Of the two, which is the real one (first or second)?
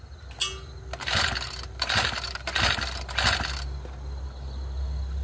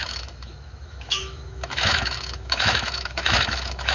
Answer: first